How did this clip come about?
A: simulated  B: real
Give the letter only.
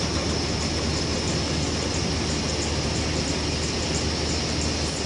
B